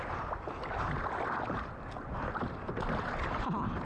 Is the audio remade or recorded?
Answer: recorded